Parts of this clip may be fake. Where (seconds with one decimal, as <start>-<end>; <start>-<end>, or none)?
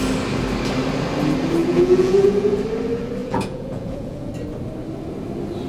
1.6-2.6; 3.2-4.3